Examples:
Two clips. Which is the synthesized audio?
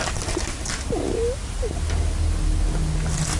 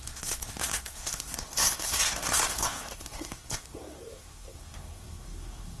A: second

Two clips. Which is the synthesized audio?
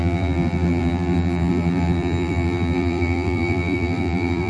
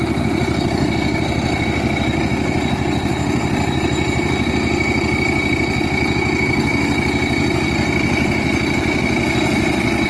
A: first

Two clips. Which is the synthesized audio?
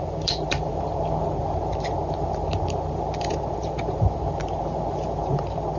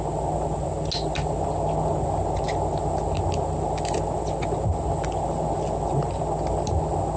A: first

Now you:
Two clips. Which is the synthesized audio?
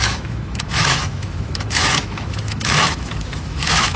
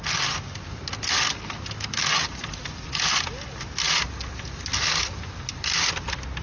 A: first